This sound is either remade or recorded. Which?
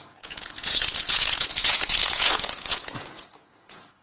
remade